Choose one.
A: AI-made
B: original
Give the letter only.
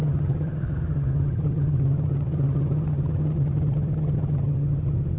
A